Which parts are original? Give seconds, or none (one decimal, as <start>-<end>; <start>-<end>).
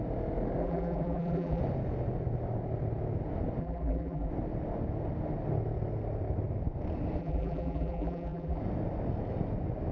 0.0-0.6; 1.6-3.6; 4.3-7.2; 8.6-9.9